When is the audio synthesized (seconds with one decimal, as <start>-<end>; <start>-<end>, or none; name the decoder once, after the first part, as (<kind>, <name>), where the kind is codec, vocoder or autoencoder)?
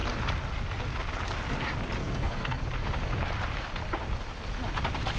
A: 2.0-2.6 (codec, SNAC)